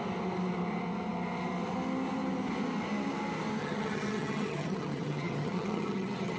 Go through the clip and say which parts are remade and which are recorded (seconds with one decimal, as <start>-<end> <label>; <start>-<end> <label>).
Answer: 0.0-3.6 recorded; 3.6-6.4 remade